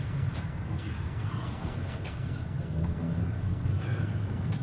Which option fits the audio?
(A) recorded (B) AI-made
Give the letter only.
B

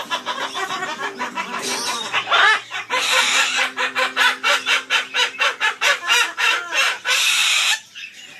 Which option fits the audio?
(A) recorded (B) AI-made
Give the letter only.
B